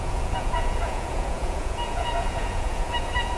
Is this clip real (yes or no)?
no